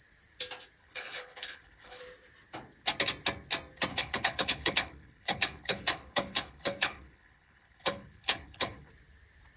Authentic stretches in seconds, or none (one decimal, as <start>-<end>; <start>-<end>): 0.0-0.8; 2.0-3.9; 8.9-9.6